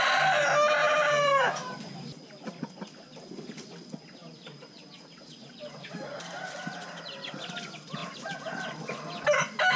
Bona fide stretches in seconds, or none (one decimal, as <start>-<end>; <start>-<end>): 0.0-0.9; 2.0-4.2; 7.0-9.8